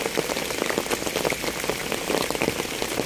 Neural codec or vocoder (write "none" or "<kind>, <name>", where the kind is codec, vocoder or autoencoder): none